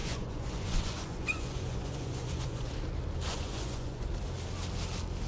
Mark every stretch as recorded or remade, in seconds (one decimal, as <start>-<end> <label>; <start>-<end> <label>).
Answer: 0.0-2.7 remade; 2.7-3.3 recorded; 3.3-4.1 remade; 4.1-5.3 recorded